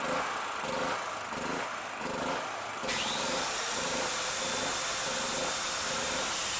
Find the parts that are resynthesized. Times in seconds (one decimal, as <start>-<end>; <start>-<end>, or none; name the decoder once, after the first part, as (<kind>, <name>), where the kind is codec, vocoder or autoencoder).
2.8-4.4 (vocoder, BigVGAN v2)